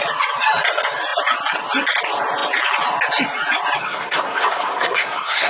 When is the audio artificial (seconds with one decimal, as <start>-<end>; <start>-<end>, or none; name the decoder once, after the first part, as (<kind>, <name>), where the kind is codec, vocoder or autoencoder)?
3.8-5.5 (codec, SNAC)